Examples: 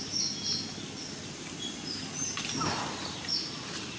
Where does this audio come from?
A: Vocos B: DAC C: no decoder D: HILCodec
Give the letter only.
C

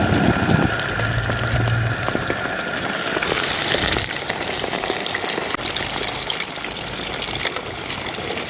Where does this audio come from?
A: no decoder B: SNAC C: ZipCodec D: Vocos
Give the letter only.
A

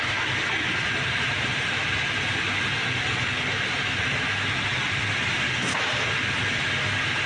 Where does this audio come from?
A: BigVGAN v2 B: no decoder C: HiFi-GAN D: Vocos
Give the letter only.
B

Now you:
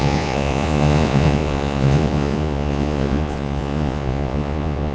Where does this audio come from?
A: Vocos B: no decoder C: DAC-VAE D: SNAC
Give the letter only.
A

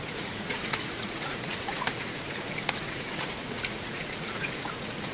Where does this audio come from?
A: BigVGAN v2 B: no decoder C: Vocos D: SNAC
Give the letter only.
C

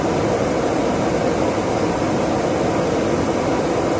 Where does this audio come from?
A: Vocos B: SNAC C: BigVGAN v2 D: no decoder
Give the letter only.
D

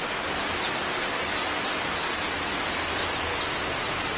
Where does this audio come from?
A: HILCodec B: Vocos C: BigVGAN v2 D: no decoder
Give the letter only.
D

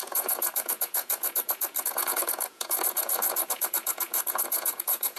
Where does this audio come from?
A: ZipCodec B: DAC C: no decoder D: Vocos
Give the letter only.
D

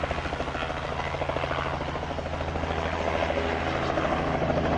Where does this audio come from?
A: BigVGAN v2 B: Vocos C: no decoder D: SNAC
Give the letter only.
C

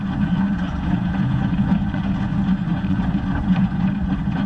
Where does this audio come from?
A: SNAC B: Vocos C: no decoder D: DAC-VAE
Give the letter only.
B